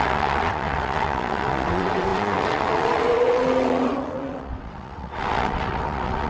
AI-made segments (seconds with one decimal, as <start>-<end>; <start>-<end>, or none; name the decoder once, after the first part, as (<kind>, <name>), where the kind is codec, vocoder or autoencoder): 0.0-6.3 (vocoder, WaveNeXt)